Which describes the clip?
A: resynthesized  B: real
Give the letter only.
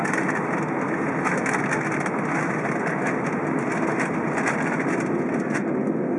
B